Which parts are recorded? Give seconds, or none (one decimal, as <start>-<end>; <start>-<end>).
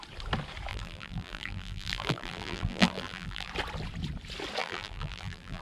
0.0-0.7; 3.5-4.6